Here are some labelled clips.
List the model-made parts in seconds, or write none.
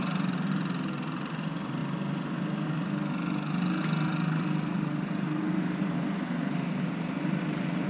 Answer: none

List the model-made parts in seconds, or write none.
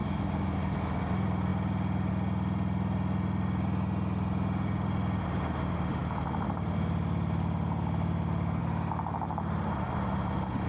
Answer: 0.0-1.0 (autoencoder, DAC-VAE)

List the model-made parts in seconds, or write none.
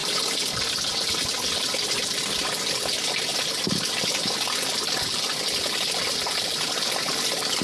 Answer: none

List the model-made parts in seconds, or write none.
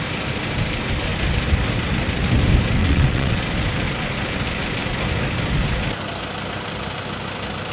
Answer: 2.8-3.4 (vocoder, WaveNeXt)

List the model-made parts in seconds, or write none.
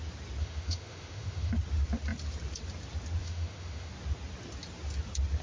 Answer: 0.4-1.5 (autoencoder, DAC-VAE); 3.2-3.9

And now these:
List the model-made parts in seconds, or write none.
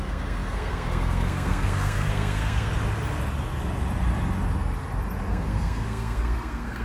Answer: 0.0-2.7 (codec, SNAC); 5.3-6.8